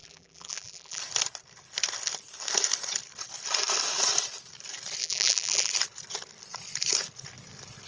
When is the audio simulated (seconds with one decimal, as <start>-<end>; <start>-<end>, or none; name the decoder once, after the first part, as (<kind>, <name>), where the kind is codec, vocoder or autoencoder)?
0.0-1.0 (vocoder, BigVGAN v2); 5.0-5.7